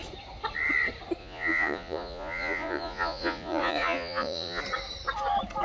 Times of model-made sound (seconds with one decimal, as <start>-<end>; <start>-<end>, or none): 1.2-4.6